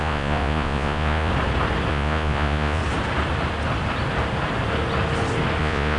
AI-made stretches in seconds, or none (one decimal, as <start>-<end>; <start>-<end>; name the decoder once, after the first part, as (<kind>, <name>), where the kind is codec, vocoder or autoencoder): 0.0-1.3 (vocoder, Vocos); 1.9-2.8; 5.6-6.0